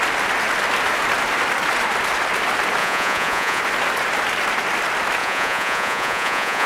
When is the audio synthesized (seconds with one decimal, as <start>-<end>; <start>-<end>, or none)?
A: 2.8-3.6; 5.2-6.7